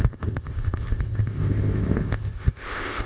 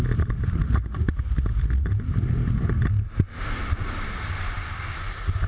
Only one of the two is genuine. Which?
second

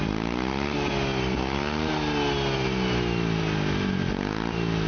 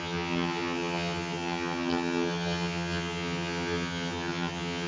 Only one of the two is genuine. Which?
first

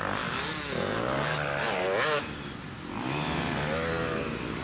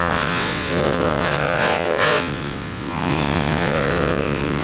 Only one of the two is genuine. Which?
first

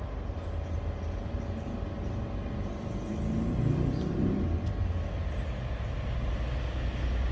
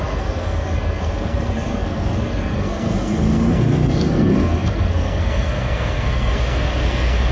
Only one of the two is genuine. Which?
first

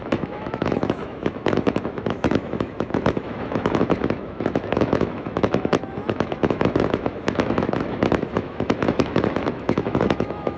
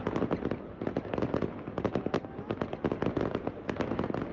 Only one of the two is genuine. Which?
second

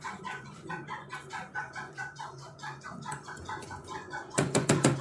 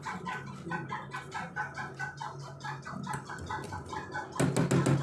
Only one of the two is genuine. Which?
second